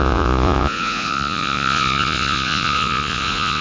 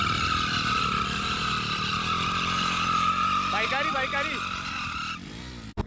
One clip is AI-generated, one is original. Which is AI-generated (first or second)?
first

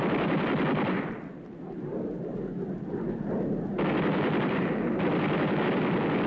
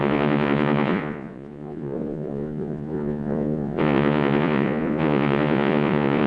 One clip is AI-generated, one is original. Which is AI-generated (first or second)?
second